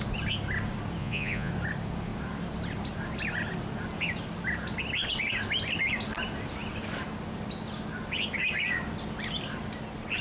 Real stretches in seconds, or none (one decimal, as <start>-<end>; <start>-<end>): 0.0-1.0; 1.5-10.2